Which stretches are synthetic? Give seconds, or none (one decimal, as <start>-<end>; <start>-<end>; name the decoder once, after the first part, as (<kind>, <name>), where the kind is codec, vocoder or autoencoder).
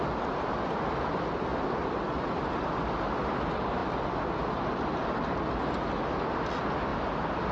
none